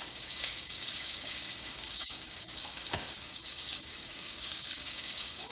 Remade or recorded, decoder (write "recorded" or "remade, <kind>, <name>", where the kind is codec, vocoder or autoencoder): remade, codec, DAC